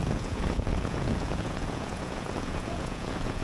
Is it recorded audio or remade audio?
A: remade